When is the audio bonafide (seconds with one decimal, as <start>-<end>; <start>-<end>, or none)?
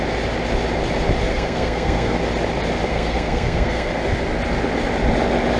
0.0-1.3; 2.2-2.9; 3.9-5.6